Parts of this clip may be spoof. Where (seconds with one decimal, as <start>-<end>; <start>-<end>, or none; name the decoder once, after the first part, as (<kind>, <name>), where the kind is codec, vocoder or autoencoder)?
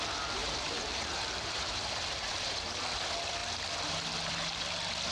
0.4-2.8 (vocoder, BigVGAN v2)